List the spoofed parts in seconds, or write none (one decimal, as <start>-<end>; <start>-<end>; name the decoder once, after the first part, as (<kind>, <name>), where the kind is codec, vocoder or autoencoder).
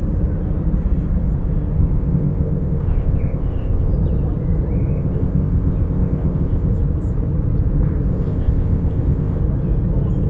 1.8-3.9 (codec, ZipCodec); 4.9-6.7; 8.1-9.4